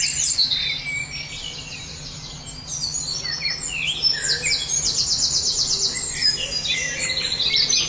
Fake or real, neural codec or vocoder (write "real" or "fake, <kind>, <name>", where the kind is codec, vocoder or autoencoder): real